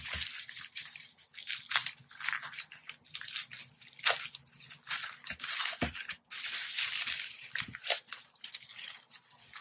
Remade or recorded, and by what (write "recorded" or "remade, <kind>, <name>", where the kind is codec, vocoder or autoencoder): remade, vocoder, BigVGAN v2